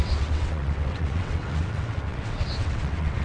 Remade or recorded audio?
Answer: remade